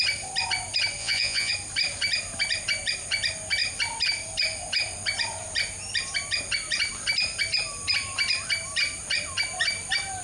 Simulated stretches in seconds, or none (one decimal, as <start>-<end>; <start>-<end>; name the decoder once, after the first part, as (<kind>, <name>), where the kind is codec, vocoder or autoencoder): 1.0-1.5 (vocoder, Vocos)